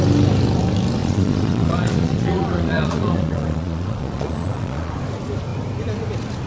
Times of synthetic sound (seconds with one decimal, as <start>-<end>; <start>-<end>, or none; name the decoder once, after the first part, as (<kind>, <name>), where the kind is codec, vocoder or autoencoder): 1.0-4.9 (vocoder, Vocos)